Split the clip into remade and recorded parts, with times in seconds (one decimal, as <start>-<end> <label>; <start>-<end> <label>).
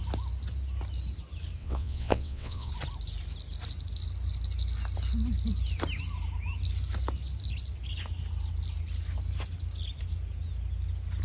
0.0-1.6 recorded; 1.6-2.7 remade; 2.7-11.2 recorded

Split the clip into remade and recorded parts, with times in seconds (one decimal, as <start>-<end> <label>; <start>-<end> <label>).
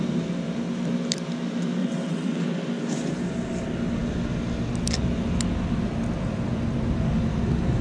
0.0-1.8 recorded; 1.8-2.4 remade; 2.4-7.8 recorded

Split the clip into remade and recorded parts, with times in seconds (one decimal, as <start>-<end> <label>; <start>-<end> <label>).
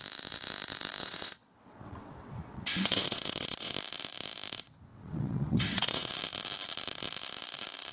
0.0-1.0 recorded; 1.0-3.7 remade; 3.7-4.9 recorded; 4.9-6.1 remade; 6.1-7.9 recorded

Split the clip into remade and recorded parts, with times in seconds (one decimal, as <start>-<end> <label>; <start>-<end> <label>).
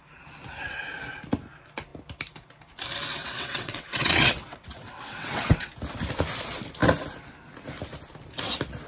0.0-3.2 recorded; 3.2-5.7 remade; 5.7-8.9 recorded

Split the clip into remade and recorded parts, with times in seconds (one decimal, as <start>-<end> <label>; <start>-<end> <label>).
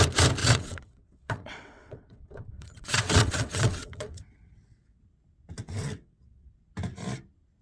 0.0-0.4 recorded; 0.4-5.0 remade; 5.0-5.6 recorded; 5.6-6.5 remade; 6.5-7.6 recorded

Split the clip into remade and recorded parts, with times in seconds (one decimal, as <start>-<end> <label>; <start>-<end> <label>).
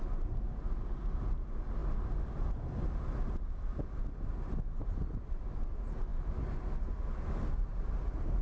0.0-8.4 recorded